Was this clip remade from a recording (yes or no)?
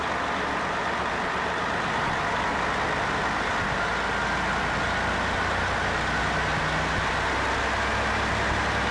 no